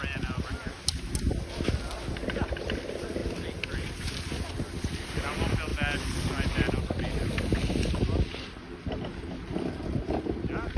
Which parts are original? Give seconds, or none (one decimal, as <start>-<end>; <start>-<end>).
0.0-10.8